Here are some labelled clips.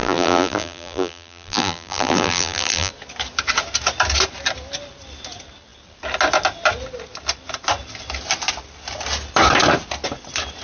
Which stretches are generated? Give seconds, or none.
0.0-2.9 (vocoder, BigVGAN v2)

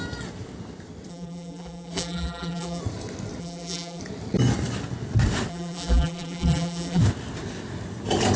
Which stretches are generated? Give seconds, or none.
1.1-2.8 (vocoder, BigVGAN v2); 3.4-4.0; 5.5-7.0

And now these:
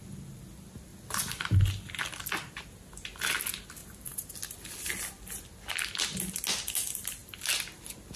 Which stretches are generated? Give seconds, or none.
0.9-1.7 (vocoder, BigVGAN v2); 3.8-4.9

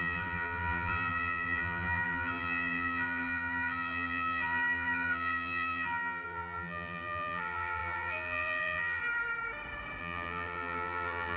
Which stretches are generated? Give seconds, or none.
0.0-9.0 (vocoder, BigVGAN v2); 10.0-11.4

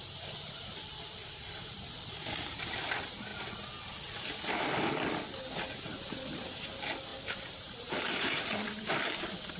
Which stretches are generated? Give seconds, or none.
1.2-1.9 (vocoder, BigVGAN v2); 7.1-9.2

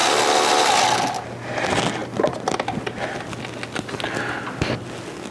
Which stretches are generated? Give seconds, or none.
none